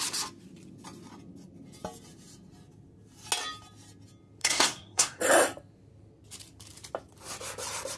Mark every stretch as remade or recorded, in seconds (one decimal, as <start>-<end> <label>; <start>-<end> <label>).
0.0-4.4 recorded; 4.4-5.2 remade; 5.2-8.0 recorded